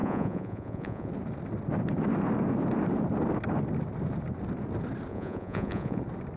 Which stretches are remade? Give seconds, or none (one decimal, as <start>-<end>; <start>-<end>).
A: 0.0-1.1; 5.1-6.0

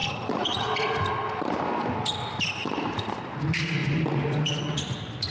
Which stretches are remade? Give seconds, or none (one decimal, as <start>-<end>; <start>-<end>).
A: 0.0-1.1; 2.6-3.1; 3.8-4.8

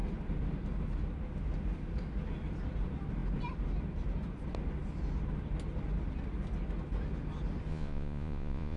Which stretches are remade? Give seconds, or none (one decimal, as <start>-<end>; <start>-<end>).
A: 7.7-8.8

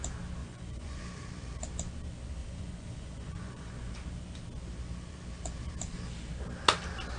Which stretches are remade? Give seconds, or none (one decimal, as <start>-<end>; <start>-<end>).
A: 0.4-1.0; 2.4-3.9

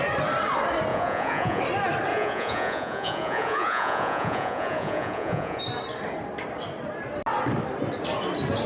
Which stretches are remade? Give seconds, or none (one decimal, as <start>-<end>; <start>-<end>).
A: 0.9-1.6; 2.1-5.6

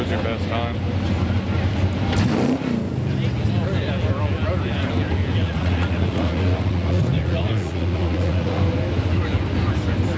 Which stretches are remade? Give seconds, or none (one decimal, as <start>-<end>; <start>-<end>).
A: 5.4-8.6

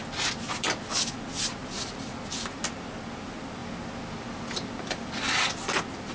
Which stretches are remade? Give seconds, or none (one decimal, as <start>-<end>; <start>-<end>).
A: none